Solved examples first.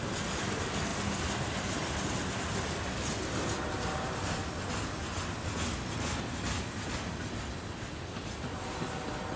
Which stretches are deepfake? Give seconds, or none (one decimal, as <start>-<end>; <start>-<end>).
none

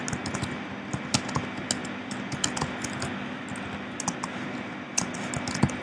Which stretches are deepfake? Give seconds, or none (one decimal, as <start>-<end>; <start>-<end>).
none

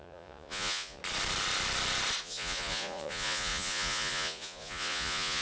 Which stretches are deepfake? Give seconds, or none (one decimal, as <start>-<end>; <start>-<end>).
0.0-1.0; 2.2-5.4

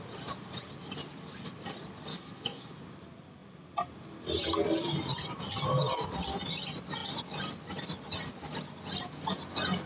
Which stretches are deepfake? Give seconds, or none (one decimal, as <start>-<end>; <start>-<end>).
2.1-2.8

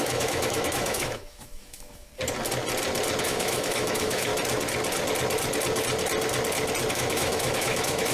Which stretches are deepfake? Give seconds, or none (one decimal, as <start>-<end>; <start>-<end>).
0.0-2.1; 3.2-4.3; 6.9-8.1

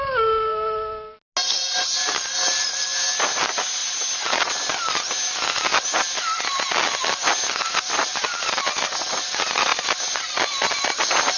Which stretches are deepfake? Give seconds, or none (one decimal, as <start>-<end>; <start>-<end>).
9.7-10.3

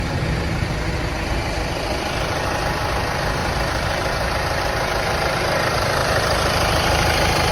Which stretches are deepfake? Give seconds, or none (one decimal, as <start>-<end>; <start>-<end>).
3.4-5.4; 6.0-7.5

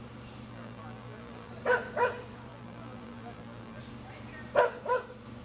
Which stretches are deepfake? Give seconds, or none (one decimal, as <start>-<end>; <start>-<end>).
0.5-1.5; 2.5-3.8